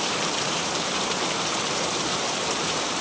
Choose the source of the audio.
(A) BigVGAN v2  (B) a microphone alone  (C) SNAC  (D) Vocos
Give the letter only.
A